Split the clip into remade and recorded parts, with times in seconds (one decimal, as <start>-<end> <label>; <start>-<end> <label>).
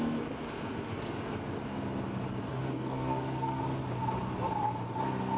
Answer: 0.0-2.5 recorded; 2.5-3.6 remade; 3.6-5.4 recorded